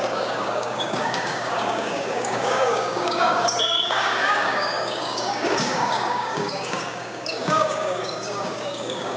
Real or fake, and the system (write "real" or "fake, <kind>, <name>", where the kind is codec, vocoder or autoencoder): fake, codec, DAC